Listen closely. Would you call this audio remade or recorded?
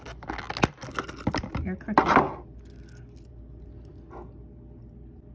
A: recorded